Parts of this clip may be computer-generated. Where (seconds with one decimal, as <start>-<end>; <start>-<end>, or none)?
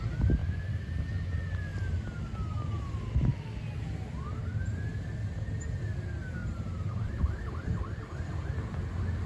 0.4-1.1; 6.4-8.0